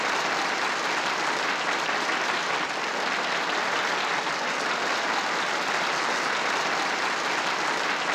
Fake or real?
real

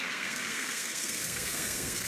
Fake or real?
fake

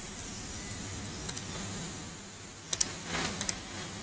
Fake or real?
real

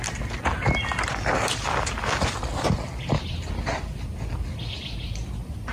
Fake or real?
real